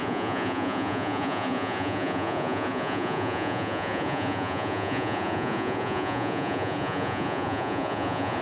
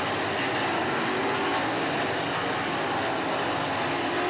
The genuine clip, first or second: second